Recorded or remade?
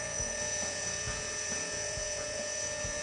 remade